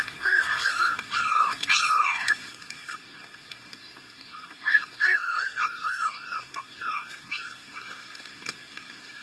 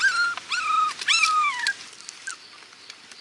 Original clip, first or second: second